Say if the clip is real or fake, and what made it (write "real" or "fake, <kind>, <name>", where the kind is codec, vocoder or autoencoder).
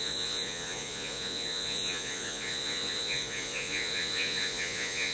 fake, vocoder, Vocos